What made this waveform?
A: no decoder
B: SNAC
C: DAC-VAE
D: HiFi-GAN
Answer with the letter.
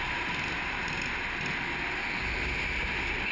A